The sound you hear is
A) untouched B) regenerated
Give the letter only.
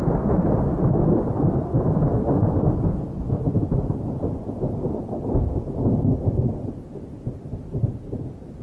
A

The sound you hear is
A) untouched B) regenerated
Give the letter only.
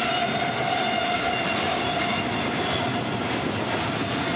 A